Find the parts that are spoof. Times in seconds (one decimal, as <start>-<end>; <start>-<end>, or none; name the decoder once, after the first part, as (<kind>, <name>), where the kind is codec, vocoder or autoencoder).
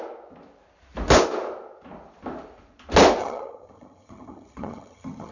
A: 3.2-5.3 (vocoder, HiFi-GAN)